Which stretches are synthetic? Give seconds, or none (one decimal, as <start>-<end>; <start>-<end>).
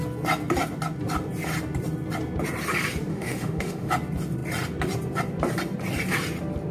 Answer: 3.1-3.9